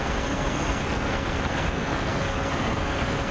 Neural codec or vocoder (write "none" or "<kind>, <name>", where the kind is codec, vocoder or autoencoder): codec, SNAC